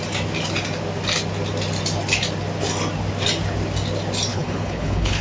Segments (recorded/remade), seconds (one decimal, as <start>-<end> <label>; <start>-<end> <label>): 0.0-4.3 recorded; 4.3-5.2 remade